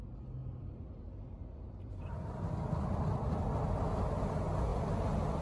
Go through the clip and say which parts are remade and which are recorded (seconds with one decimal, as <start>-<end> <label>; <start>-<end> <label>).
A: 0.0-5.4 recorded